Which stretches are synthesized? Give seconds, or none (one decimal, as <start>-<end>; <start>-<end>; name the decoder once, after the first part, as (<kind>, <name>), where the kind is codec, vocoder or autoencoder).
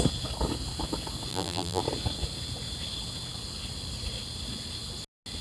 1.3-1.8 (vocoder, BigVGAN v2)